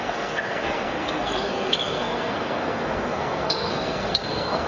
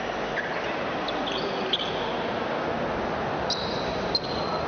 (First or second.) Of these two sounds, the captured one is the second